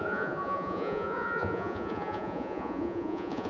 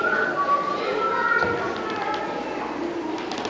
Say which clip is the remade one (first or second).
first